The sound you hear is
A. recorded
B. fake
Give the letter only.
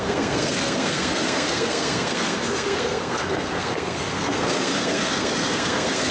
B